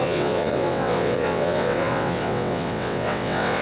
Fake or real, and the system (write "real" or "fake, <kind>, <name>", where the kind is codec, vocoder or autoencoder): fake, vocoder, WaveNeXt